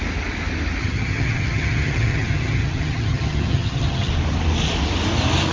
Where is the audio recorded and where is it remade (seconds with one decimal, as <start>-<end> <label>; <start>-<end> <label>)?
0.0-0.8 recorded; 0.8-4.1 remade; 4.1-5.5 recorded